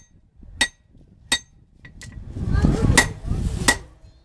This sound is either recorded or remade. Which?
recorded